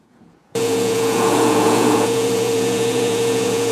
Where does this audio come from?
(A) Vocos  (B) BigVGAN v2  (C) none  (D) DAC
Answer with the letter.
A